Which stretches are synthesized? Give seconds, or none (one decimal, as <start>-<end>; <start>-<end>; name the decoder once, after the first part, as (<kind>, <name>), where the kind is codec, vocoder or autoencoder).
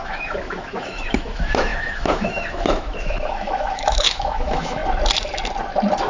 0.0-4.8 (autoencoder, DAC-VAE)